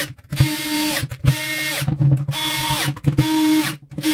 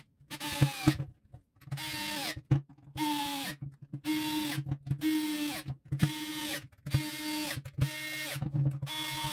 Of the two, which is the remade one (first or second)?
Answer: first